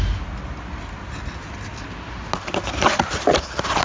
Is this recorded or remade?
recorded